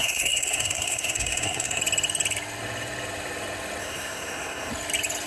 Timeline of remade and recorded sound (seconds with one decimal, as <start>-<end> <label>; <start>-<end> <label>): 0.0-1.8 remade; 1.8-3.8 recorded; 3.8-4.7 remade; 4.7-5.3 recorded